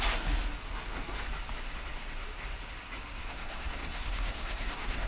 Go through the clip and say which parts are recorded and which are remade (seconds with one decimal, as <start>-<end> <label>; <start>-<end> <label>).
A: 0.0-0.6 recorded; 0.6-1.3 remade; 1.3-3.2 recorded; 3.2-5.1 remade